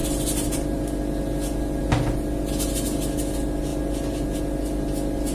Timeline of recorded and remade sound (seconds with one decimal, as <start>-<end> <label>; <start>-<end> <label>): 0.0-5.3 recorded